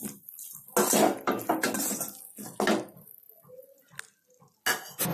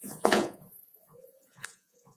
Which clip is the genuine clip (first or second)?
first